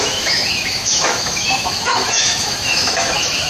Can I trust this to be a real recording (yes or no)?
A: no